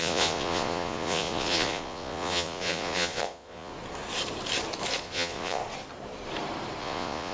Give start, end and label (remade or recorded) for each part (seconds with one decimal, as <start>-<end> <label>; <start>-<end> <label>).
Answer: 0.0-3.7 remade; 3.7-5.0 recorded; 5.0-5.6 remade; 5.6-6.8 recorded; 6.8-7.3 remade